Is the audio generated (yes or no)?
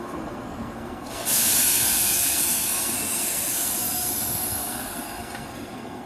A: yes